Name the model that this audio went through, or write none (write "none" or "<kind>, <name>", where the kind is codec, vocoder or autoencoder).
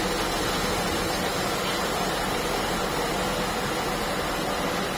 none